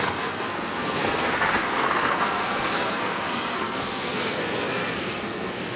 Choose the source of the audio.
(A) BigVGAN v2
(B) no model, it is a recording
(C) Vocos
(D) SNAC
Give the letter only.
D